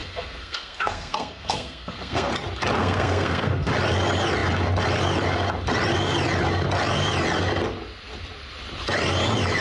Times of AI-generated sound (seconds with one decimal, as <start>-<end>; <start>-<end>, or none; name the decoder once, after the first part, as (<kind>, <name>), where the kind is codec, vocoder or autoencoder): 0.0-2.3 (codec, SNAC); 2.8-3.7